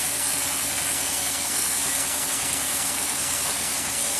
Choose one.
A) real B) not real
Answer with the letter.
B